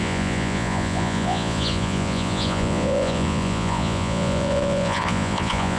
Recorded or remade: remade